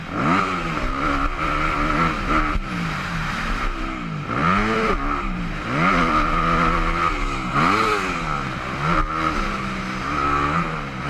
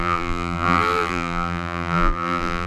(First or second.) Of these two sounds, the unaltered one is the first